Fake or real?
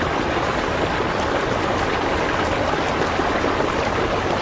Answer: real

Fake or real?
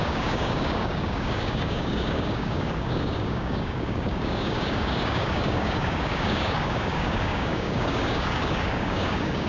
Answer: fake